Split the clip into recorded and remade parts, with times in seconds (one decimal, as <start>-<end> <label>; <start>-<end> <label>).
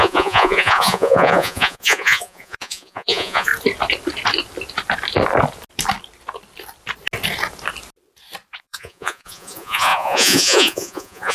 0.0-3.5 remade; 3.5-8.6 recorded; 8.6-11.3 remade